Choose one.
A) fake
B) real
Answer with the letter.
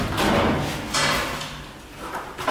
B